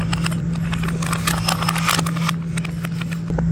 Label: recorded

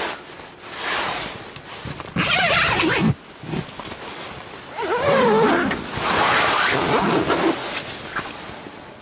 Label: recorded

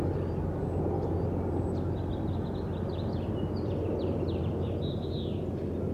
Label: recorded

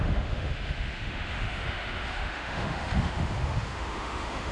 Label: remade